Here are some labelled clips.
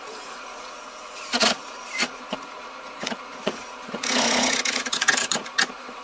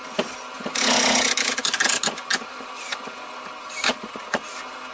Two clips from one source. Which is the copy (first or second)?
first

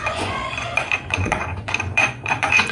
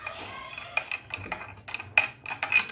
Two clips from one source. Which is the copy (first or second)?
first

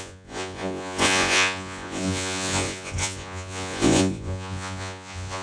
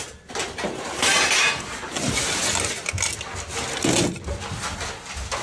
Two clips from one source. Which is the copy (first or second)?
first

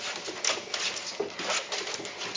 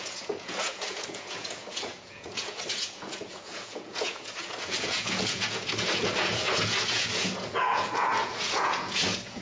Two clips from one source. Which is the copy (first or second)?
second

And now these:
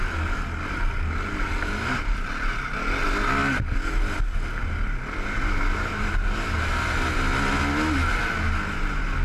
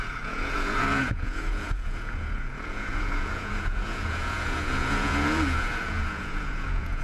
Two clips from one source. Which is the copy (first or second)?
second